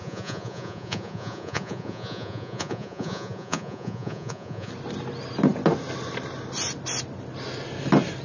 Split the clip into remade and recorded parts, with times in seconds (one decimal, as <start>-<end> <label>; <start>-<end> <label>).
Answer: 0.0-4.7 remade; 4.7-8.2 recorded